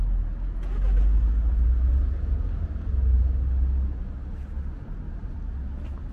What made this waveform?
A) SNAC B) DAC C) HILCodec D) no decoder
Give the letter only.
D